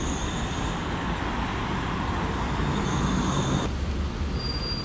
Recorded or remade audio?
recorded